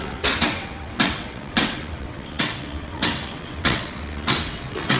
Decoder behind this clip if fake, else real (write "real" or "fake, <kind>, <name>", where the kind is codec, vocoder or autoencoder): fake, vocoder, WaveNeXt